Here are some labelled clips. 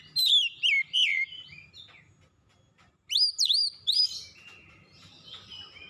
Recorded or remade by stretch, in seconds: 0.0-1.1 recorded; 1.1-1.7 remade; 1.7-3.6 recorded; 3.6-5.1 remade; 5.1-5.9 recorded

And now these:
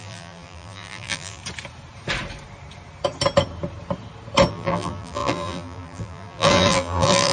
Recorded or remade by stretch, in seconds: 0.0-1.4 remade; 1.4-4.5 recorded; 4.5-7.3 remade

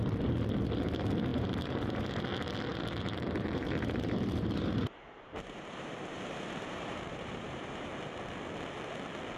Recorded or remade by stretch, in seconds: 0.0-1.3 recorded; 1.3-2.2 remade; 2.2-2.7 recorded; 2.7-7.9 remade; 7.9-9.4 recorded

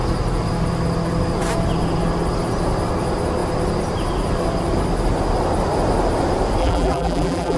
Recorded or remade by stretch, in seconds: 0.0-6.6 recorded; 6.6-7.6 remade

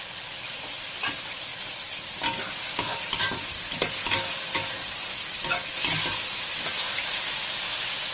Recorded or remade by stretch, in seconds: 0.0-8.1 recorded

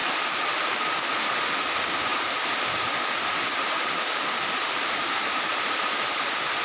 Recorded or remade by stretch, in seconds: 0.0-0.8 remade; 0.8-2.1 recorded; 2.1-6.1 remade; 6.1-6.6 recorded

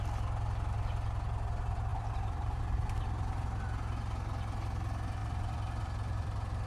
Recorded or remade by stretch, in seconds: 0.0-1.9 recorded; 1.9-2.6 remade; 2.6-5.2 recorded; 5.2-6.7 remade